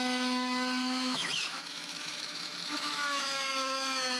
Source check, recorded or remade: remade